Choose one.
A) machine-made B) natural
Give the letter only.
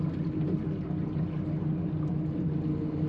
B